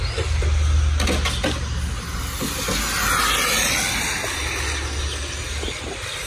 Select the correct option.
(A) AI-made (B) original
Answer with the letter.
B